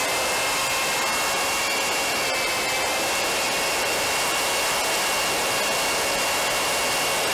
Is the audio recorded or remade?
recorded